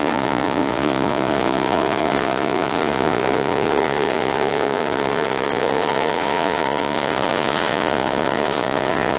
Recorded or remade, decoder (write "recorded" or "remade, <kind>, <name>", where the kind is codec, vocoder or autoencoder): remade, vocoder, Vocos